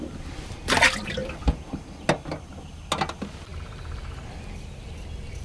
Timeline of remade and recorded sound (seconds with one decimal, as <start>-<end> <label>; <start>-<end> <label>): 0.0-5.4 recorded